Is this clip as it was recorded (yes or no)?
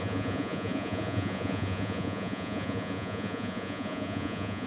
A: no